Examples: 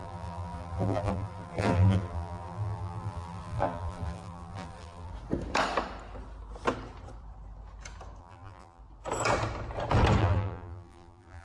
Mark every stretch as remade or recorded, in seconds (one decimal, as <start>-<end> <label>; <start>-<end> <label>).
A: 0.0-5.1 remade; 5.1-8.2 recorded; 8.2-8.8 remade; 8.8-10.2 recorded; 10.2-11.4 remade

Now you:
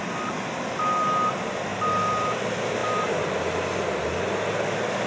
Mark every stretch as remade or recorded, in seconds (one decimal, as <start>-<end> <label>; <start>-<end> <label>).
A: 0.0-5.1 recorded

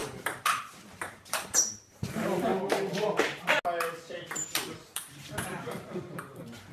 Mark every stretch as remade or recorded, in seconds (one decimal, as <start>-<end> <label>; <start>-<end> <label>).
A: 0.0-2.5 remade; 2.5-4.1 recorded; 4.1-6.7 remade